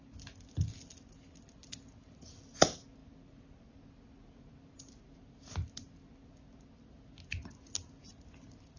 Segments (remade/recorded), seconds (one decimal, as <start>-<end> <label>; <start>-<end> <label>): 0.0-8.8 recorded